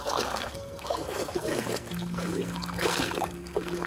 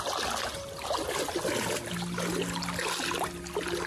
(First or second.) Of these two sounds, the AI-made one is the first